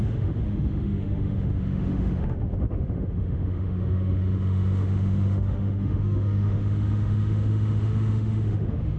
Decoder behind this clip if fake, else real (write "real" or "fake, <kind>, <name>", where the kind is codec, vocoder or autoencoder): fake, autoencoder, DAC-VAE